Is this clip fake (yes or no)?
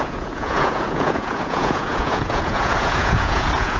yes